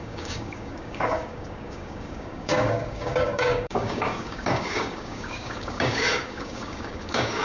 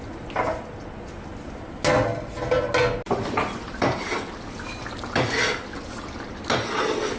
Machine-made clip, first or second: first